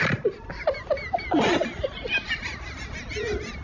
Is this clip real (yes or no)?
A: yes